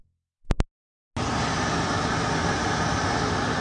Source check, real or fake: real